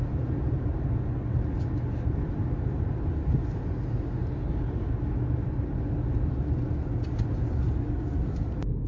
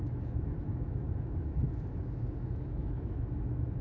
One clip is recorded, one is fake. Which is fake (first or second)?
second